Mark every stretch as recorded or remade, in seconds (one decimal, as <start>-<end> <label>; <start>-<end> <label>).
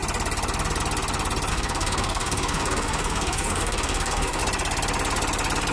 0.0-1.5 recorded; 1.5-4.4 remade; 4.4-5.7 recorded